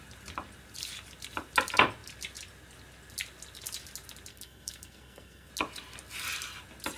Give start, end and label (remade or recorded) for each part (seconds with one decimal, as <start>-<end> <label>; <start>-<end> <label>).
0.0-4.3 recorded; 4.3-5.5 remade; 5.5-7.0 recorded